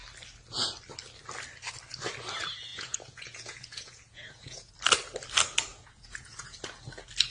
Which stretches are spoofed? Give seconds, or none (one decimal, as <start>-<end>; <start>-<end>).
2.7-4.7; 5.7-6.6